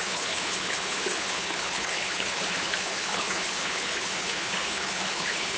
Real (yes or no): no